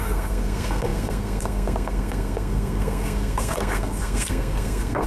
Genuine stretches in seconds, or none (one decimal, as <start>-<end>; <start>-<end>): none